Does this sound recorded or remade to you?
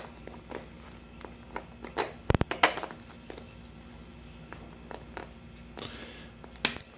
recorded